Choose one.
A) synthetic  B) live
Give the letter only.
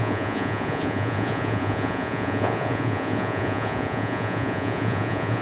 A